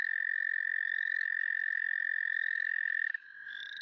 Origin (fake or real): fake